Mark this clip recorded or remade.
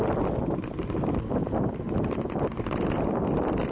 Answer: recorded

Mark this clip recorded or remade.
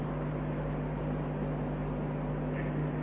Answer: recorded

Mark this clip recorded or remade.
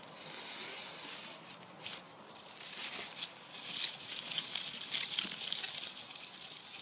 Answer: recorded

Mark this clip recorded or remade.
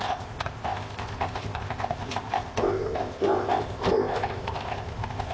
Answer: remade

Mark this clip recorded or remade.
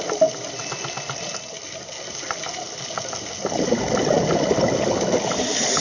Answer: recorded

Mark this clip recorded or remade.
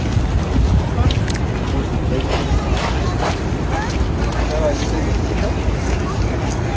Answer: recorded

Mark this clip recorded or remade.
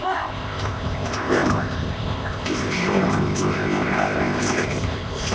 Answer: remade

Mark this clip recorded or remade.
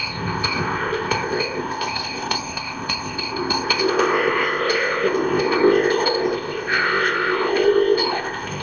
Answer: remade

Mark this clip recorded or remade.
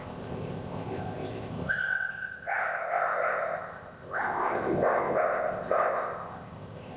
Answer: remade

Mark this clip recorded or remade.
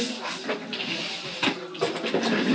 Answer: recorded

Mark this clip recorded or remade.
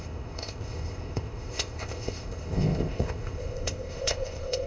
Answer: remade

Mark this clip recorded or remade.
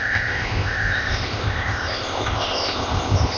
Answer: remade